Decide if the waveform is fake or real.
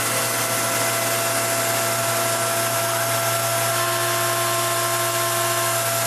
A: real